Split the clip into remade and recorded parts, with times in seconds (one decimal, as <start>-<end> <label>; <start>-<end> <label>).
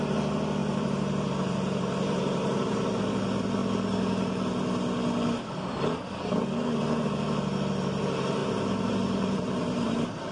0.0-3.6 remade; 3.6-7.6 recorded; 7.6-10.3 remade